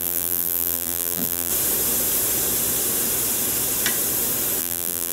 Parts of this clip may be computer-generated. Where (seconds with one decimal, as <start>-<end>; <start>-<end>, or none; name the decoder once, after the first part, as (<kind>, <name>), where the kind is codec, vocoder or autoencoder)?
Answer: 0.0-1.5 (vocoder, BigVGAN v2); 4.6-5.1